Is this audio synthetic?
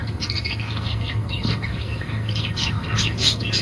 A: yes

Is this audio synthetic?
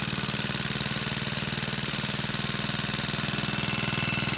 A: no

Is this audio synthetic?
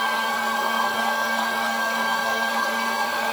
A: yes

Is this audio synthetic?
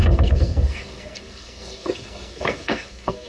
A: yes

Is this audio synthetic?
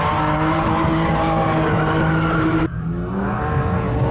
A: no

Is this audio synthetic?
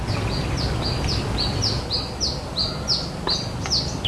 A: no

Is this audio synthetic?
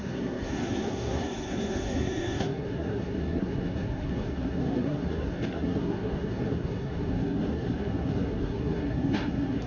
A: yes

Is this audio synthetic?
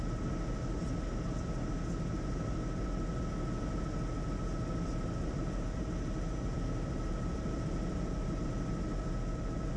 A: no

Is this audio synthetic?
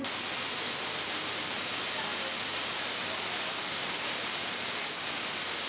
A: no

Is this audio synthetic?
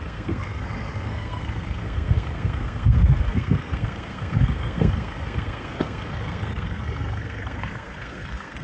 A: yes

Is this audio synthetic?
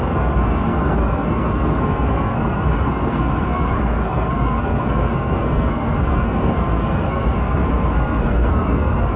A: yes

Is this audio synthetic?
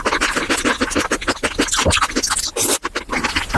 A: no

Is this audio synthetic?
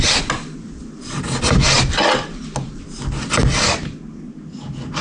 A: no